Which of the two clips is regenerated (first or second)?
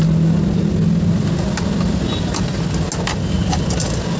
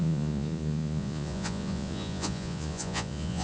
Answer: second